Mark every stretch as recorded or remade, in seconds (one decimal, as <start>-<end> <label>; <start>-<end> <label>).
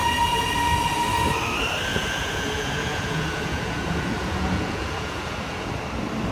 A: 0.0-0.5 remade; 0.5-1.9 recorded; 1.9-5.7 remade; 5.7-6.3 recorded